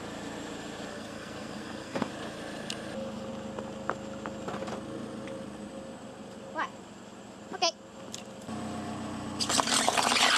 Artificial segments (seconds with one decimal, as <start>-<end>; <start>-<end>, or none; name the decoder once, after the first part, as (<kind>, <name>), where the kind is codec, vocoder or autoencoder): 0.9-2.1 (codec, SNAC)